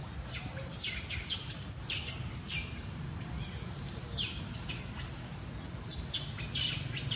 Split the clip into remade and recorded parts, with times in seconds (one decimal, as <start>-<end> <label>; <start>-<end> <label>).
0.0-3.2 remade; 3.2-7.2 recorded